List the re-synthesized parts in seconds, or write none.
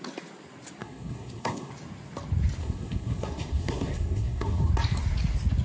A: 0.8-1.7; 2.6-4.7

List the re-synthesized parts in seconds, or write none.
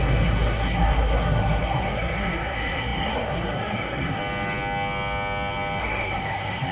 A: 0.0-4.2; 5.8-6.7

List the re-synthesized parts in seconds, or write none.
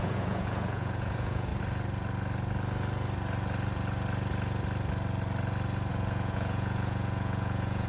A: 0.0-1.5; 5.9-7.9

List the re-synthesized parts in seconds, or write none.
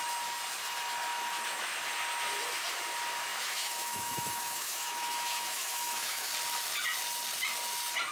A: 1.1-1.7; 3.3-6.3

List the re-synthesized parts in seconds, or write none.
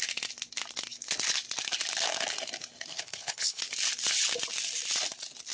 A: 2.9-3.6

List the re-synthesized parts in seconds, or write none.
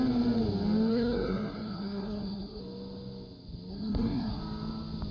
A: 0.9-2.6; 3.7-4.4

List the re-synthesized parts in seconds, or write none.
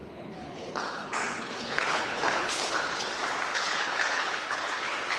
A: 0.0-3.1; 3.5-5.2